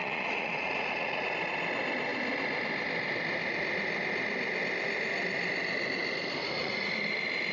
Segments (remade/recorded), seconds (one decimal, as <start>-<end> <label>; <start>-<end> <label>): 0.0-1.3 remade; 1.3-6.4 recorded; 6.4-6.9 remade; 6.9-7.5 recorded